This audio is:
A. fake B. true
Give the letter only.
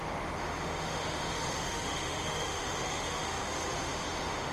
A